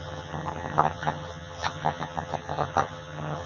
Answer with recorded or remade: remade